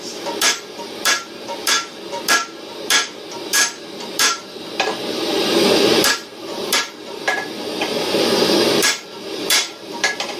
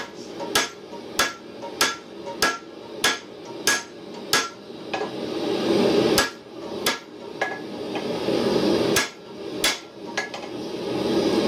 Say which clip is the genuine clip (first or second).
second